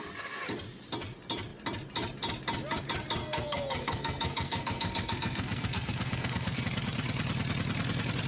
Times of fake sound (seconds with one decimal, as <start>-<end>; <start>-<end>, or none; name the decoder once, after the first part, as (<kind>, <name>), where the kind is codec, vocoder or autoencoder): 3.2-6.6 (codec, SNAC)